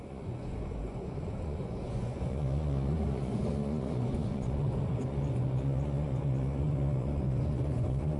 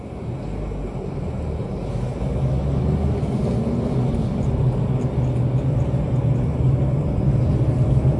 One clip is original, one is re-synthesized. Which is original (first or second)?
second